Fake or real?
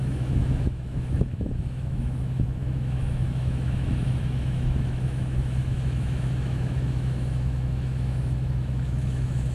fake